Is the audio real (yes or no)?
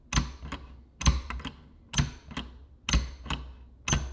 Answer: yes